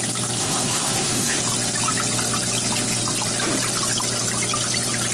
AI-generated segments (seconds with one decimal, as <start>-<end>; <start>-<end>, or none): 0.4-1.4